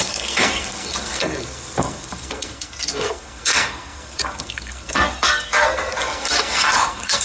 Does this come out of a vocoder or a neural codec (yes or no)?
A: yes